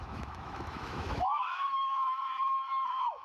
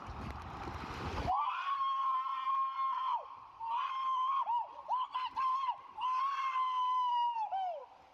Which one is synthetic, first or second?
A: first